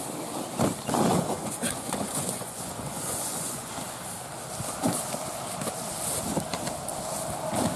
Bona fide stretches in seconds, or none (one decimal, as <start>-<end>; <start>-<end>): 0.0-1.1; 3.7-7.8